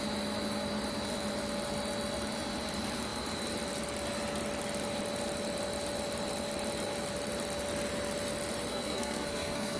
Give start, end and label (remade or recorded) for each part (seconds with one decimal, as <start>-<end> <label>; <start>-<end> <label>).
0.0-8.7 recorded; 8.7-9.8 remade